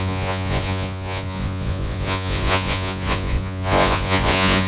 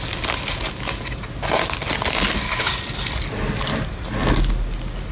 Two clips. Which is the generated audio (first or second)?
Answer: first